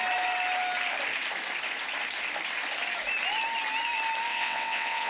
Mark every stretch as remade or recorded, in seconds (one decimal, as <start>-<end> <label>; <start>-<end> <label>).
0.0-4.3 recorded; 4.3-5.1 remade